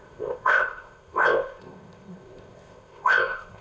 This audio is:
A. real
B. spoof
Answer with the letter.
B